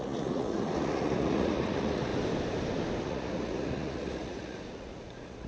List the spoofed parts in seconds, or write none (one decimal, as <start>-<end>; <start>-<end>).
0.0-2.1; 3.0-5.5

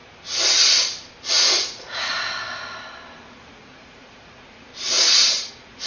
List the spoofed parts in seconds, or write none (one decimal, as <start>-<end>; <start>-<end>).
1.3-2.1; 3.3-4.7; 5.5-5.9

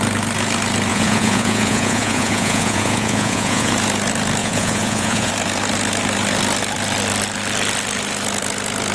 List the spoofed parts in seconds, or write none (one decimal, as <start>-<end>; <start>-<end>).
0.9-3.7; 4.4-5.3

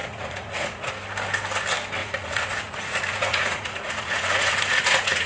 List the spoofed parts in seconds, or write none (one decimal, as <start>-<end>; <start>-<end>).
0.0-0.9; 2.0-5.3

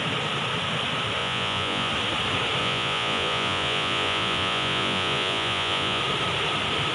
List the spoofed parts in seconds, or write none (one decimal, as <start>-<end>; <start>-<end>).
1.2-1.9; 2.6-6.0

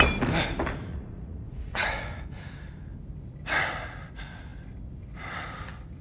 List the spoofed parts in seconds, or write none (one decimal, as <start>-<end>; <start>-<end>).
0.9-2.0

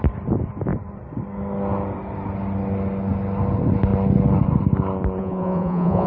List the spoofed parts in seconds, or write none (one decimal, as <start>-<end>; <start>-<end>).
5.2-6.1

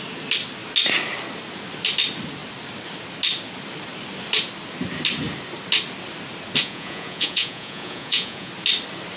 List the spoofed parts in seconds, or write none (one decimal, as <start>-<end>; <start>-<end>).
6.6-8.5